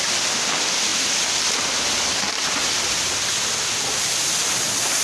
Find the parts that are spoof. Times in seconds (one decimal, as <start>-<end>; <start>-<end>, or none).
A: none